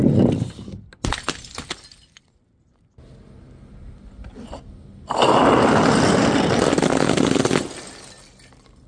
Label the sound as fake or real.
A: real